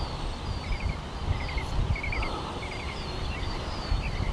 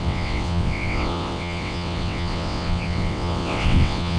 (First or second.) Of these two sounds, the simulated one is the second